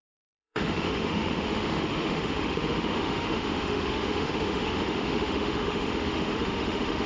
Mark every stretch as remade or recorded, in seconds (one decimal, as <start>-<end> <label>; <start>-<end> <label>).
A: 0.0-7.1 remade